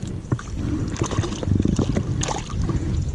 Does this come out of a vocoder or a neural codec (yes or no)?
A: no